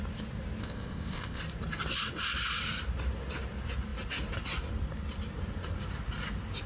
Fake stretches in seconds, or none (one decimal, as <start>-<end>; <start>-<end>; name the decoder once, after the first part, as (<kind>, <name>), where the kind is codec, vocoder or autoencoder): 0.6-1.4 (codec, ZipCodec)